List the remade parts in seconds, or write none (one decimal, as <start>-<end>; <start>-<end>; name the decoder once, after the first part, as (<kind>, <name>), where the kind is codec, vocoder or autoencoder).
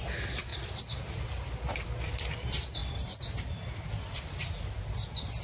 none